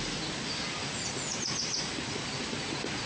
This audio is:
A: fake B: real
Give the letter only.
B